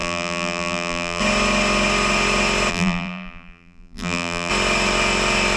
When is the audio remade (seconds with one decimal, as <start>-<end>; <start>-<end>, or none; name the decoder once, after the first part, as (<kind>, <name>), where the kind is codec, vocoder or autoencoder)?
0.0-1.2 (vocoder, BigVGAN v2); 2.7-4.5

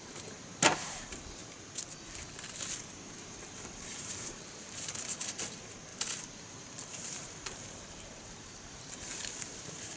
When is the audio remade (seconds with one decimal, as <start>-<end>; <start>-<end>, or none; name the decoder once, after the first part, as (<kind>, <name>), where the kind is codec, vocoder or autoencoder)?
0.0-1.4 (vocoder, BigVGAN v2); 2.9-5.9; 6.4-10.0